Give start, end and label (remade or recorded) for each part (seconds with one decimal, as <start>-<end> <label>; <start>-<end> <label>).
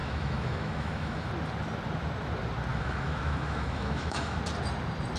0.0-1.3 remade; 1.3-2.7 recorded; 2.7-4.4 remade; 4.4-5.2 recorded